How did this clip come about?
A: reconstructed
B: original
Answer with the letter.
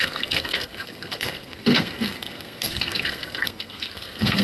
A